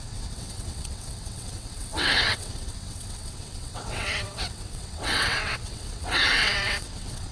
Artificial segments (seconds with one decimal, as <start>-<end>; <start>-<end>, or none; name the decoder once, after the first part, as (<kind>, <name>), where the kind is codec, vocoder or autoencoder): 0.0-7.3 (vocoder, WaveNeXt)